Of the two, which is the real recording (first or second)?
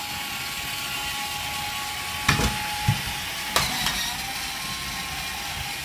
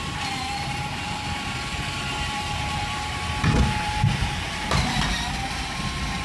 first